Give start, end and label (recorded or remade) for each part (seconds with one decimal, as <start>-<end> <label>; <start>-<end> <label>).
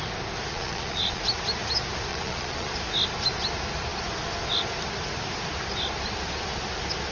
0.0-0.5 recorded; 0.5-1.2 remade; 1.2-2.1 recorded; 2.1-2.7 remade; 2.7-7.1 recorded